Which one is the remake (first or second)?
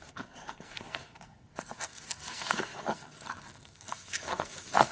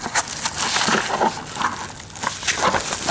first